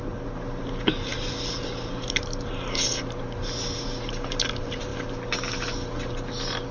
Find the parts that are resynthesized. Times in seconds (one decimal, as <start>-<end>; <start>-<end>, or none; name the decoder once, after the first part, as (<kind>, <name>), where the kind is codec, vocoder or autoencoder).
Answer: 0.0-4.9 (vocoder, BigVGAN v2)